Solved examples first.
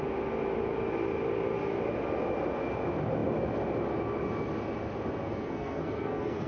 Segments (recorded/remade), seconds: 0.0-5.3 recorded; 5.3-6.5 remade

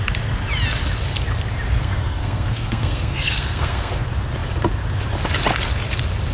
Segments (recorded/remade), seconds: 0.0-1.8 recorded; 1.8-3.9 remade; 3.9-6.3 recorded